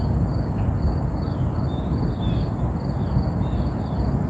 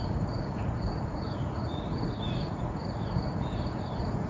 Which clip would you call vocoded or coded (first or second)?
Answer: second